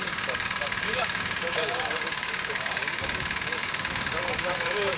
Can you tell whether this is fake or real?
fake